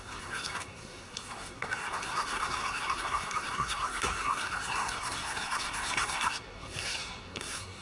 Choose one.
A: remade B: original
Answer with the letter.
A